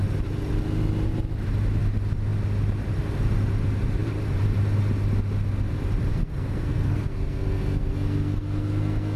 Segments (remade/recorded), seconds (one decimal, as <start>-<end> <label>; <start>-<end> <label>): 0.0-6.1 recorded; 6.1-9.2 remade